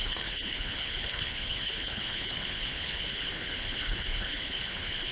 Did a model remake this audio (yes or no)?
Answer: yes